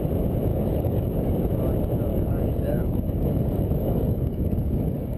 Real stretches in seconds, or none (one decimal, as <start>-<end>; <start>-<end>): 0.0-0.5; 1.3-2.1